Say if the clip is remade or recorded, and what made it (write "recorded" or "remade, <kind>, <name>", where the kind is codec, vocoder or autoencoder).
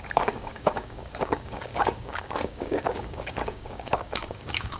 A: remade, codec, DAC